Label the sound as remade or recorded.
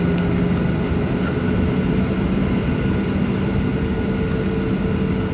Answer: recorded